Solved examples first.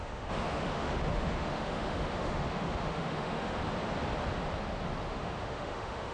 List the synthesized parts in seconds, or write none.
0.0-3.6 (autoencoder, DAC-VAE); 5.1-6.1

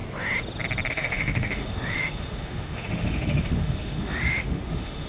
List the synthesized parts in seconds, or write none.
0.9-5.1 (autoencoder, DAC-VAE)

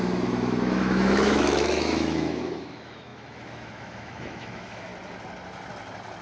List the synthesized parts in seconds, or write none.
0.0-4.9 (autoencoder, DAC-VAE)

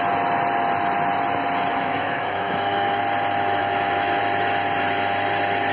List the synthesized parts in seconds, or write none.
1.7-3.0 (autoencoder, DAC-VAE); 3.6-4.2

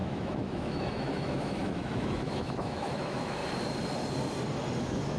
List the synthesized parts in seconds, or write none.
0.0-3.4 (autoencoder, DAC-VAE); 4.8-5.2